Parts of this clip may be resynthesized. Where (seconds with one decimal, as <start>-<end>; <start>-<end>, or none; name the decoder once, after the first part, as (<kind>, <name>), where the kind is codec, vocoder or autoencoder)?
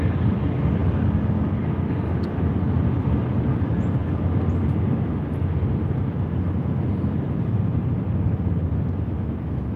none